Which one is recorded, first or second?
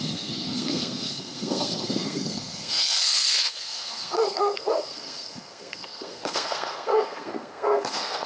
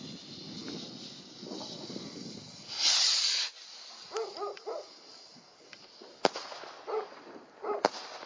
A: second